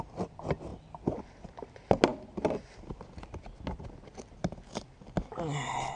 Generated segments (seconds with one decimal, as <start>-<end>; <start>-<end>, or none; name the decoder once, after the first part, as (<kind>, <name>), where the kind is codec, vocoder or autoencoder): none